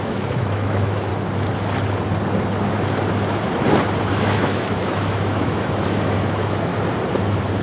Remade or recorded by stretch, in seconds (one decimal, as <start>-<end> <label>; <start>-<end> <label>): 0.0-1.1 remade; 1.1-4.0 recorded; 4.0-6.7 remade; 6.7-7.6 recorded